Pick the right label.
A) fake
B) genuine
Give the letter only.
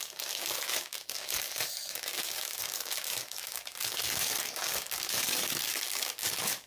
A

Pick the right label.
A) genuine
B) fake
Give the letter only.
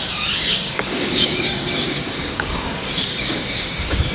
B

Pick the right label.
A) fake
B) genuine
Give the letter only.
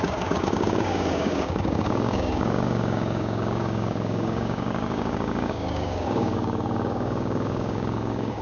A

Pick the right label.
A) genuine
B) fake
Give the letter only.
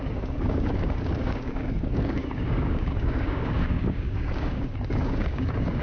B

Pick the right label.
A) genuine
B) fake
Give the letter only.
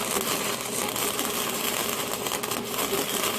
A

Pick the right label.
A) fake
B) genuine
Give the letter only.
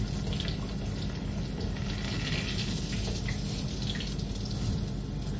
B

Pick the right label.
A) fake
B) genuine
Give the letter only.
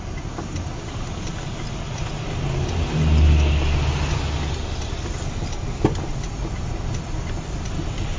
B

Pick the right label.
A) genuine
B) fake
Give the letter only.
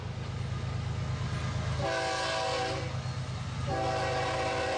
A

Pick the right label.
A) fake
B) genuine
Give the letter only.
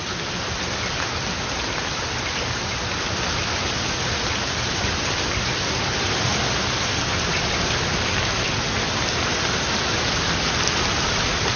B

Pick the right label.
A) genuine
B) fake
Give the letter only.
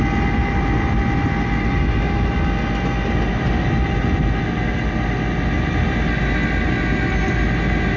A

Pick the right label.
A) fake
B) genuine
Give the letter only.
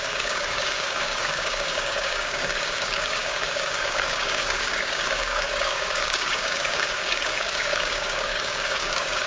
A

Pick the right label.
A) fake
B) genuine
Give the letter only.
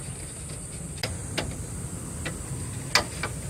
B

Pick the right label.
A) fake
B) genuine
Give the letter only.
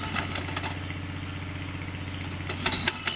B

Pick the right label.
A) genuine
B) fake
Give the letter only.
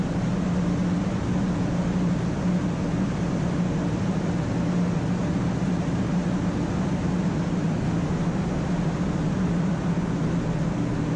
A